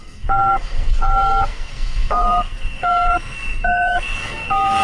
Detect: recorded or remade remade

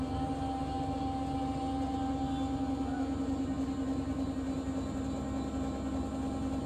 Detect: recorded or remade recorded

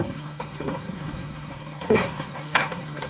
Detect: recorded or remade remade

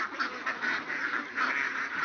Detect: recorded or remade recorded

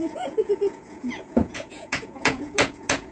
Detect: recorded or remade remade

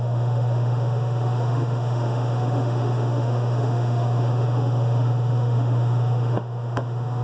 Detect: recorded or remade remade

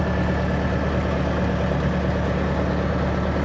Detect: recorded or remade recorded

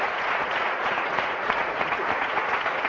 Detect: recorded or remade remade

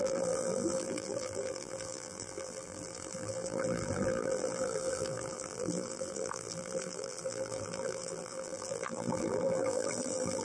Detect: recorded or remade remade